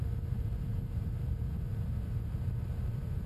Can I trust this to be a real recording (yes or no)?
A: no